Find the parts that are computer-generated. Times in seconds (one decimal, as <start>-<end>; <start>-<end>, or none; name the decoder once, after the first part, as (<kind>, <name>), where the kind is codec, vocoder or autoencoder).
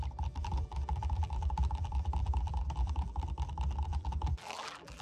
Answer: 0.4-3.2 (vocoder, BigVGAN v2); 3.9-5.0